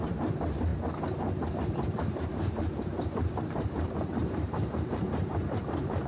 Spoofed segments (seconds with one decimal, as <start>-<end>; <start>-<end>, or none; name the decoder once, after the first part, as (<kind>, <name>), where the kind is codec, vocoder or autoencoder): 0.0-0.7 (vocoder, BigVGAN v2); 1.5-6.1